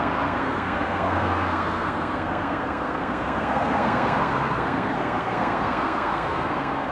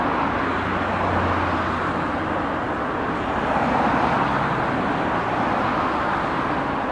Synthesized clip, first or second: first